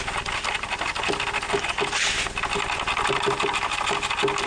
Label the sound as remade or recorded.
recorded